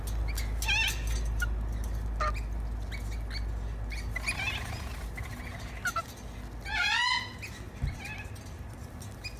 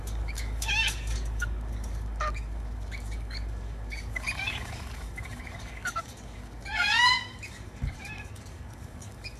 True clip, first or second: first